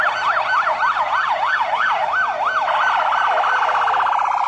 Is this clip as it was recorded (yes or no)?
yes